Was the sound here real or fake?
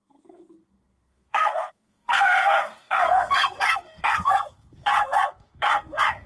fake